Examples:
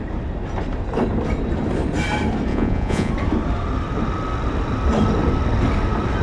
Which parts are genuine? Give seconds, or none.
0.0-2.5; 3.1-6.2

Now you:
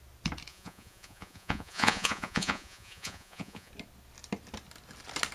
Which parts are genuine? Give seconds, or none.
0.0-0.5; 3.7-5.3

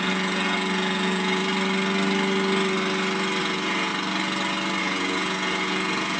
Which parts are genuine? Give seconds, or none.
1.4-3.4; 3.9-4.8

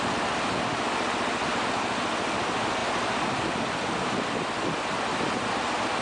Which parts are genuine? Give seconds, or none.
0.0-6.0

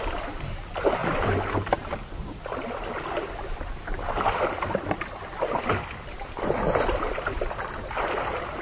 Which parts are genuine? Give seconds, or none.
0.0-8.6

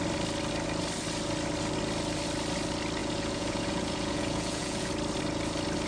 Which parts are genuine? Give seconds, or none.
0.0-3.0; 4.9-5.9

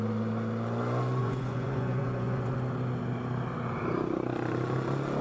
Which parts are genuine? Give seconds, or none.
0.0-1.2; 2.5-5.2

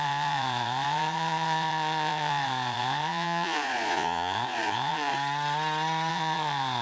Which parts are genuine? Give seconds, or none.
5.1-6.1